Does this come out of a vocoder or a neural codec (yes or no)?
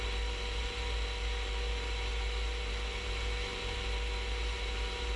no